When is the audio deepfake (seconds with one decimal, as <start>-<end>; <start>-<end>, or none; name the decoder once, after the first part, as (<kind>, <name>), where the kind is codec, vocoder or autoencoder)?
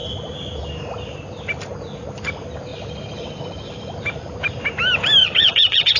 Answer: 5.2-6.0 (vocoder, HiFi-GAN)